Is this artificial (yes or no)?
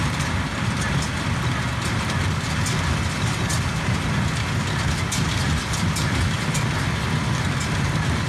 no